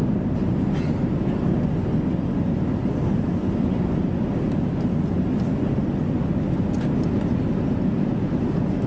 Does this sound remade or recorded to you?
recorded